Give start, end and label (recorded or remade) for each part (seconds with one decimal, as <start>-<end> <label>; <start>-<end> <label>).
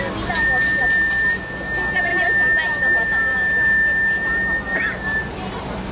0.0-5.9 recorded